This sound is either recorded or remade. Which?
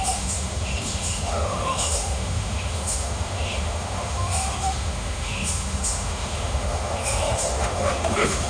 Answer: remade